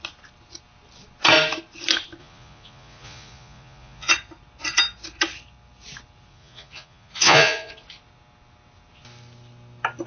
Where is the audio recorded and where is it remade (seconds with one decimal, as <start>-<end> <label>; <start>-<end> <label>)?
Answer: 0.0-2.2 recorded; 2.2-4.1 remade; 4.1-6.3 recorded; 6.3-7.7 remade; 7.7-10.1 recorded